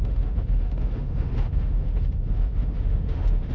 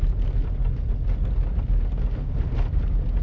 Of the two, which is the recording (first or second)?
second